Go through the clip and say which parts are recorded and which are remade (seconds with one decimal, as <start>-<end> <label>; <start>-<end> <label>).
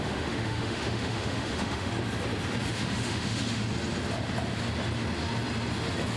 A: 0.0-1.9 remade; 1.9-2.7 recorded; 2.7-3.6 remade; 3.6-6.2 recorded